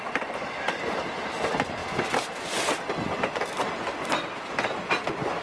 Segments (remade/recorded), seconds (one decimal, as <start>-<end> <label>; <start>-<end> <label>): 0.0-5.4 recorded